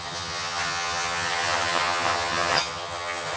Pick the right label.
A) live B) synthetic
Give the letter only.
B